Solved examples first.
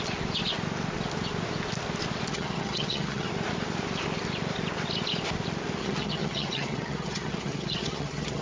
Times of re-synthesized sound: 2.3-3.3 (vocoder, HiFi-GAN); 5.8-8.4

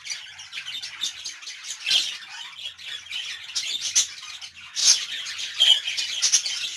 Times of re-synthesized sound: none

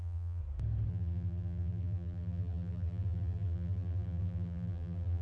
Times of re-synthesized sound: 0.0-0.4 (vocoder, BigVGAN v2); 0.9-5.2

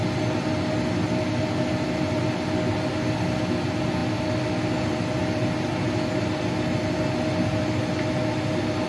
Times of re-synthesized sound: none

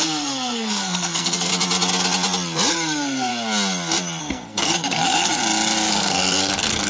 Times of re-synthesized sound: 0.0-1.5 (codec, SNAC); 2.7-3.3; 4.2-5.4; 5.9-6.9